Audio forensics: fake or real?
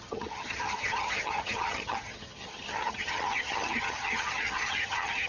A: fake